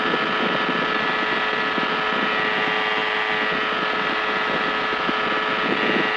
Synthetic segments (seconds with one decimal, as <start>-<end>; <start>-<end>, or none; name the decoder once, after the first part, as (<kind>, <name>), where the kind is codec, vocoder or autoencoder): none